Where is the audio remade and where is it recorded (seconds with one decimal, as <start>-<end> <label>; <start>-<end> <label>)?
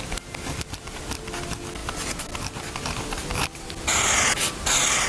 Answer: 0.0-5.1 recorded